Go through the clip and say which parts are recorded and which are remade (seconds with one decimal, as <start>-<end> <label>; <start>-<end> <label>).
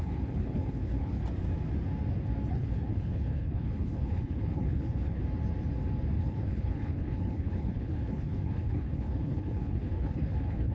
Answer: 0.0-1.2 remade; 1.2-2.5 recorded; 2.5-5.2 remade; 5.2-6.2 recorded; 6.2-10.7 remade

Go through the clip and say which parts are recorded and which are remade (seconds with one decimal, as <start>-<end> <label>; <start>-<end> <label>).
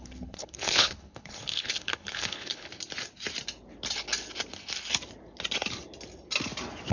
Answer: 0.0-2.7 remade; 2.7-6.9 recorded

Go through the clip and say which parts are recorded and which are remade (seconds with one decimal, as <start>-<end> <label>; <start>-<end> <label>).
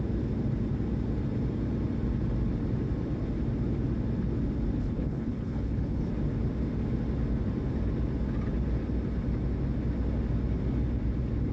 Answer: 0.0-4.8 recorded; 4.8-6.1 remade; 6.1-11.5 recorded